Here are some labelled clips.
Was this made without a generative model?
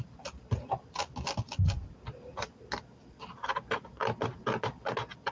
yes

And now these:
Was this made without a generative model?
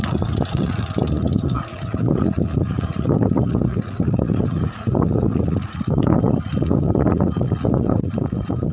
no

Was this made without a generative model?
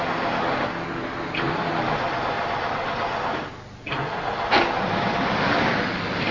yes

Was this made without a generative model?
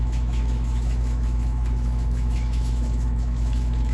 no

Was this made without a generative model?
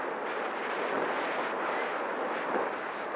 yes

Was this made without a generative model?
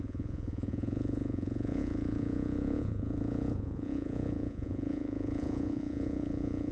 no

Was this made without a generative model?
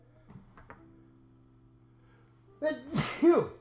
yes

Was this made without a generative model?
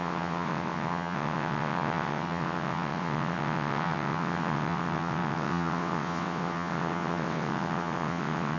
no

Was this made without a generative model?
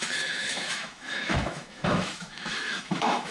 no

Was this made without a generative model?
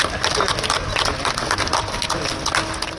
yes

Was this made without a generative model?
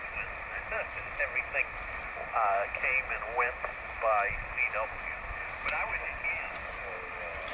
yes